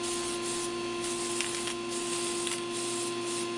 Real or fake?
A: real